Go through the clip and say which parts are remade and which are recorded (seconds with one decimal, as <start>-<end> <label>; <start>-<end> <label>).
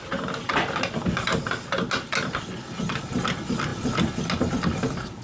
0.0-5.2 recorded